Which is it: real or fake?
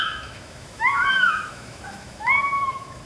fake